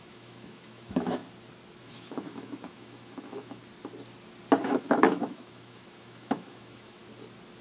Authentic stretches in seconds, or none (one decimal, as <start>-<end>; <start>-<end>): 1.2-1.8; 3.6-4.6; 7.0-7.6